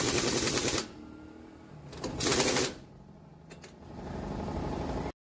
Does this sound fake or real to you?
real